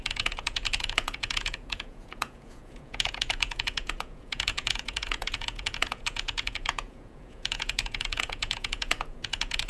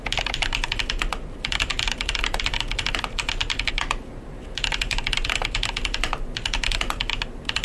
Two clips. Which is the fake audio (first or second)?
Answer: first